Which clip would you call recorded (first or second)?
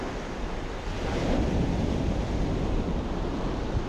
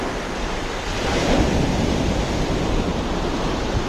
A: first